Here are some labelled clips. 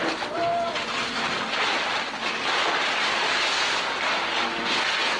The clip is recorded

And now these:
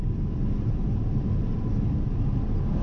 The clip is recorded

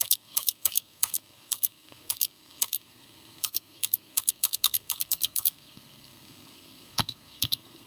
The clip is remade